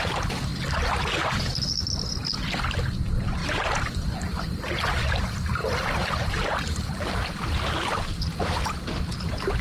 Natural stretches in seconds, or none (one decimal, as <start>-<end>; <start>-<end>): 0.0-3.4; 4.1-9.6